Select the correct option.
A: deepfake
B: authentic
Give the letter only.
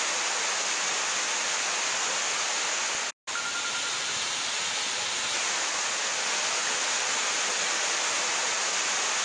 B